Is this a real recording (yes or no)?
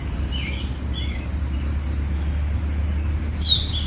yes